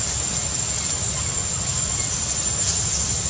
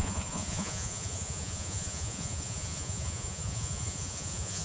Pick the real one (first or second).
first